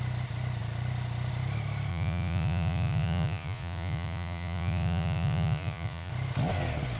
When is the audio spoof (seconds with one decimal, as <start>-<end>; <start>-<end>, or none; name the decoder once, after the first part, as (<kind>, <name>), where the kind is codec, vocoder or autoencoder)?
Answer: 1.9-6.1 (vocoder, Vocos)